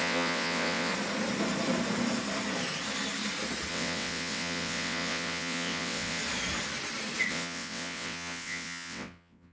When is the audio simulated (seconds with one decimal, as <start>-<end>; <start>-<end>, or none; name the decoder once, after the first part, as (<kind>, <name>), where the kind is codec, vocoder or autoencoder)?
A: 0.0-0.9 (vocoder, WaveNeXt); 3.7-6.2; 7.3-9.5